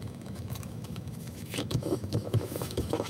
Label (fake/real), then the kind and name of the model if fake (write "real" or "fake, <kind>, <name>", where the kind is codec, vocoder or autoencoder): fake, autoencoder, DAC-VAE